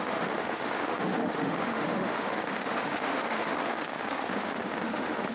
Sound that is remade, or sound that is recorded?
remade